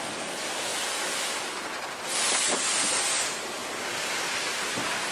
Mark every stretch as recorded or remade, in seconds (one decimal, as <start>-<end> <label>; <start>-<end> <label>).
0.0-5.1 recorded